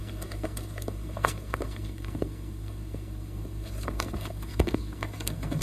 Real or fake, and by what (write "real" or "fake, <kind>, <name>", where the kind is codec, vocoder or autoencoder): fake, codec, SNAC